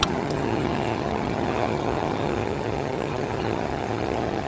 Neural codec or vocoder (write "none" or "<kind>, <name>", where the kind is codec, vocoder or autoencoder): vocoder, HiFi-GAN